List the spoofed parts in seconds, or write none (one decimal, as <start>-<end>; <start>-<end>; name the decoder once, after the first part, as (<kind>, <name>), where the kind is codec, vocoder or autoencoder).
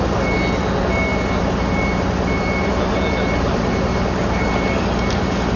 none